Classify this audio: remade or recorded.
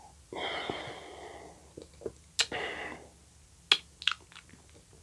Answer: recorded